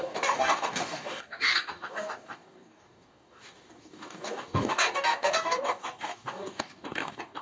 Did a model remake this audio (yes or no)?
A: yes